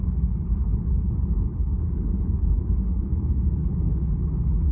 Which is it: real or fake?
fake